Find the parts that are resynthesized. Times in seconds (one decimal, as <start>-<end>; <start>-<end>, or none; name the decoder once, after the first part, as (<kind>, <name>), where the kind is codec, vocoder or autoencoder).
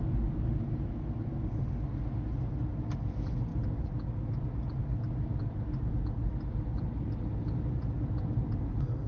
none